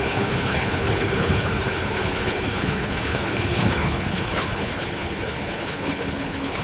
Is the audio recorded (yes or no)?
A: no